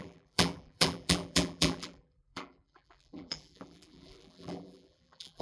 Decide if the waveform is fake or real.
fake